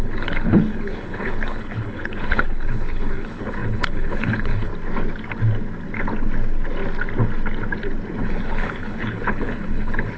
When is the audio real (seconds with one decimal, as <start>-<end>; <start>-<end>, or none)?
4.7-8.2